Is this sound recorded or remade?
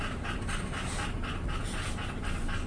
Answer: recorded